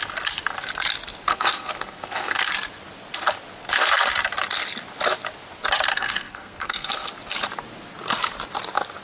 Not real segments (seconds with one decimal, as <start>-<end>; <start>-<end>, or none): 1.3-2.5; 5.9-7.1

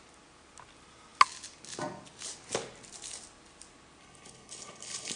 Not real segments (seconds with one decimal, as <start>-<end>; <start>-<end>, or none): 4.0-5.2

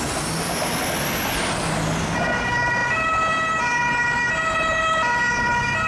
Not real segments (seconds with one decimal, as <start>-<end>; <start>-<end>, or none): none

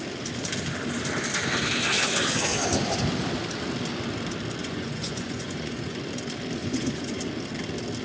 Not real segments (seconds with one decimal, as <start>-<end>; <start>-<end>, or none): 4.6-6.0; 6.6-7.2